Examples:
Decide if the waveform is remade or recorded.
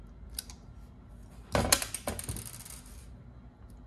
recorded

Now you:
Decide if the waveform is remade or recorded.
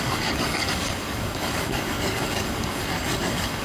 remade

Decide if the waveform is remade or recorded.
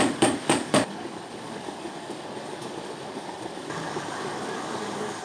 remade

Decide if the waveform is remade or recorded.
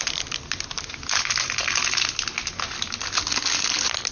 recorded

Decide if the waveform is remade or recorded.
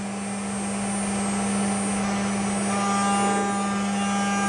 recorded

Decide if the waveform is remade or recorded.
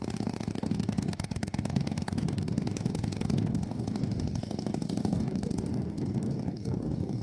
remade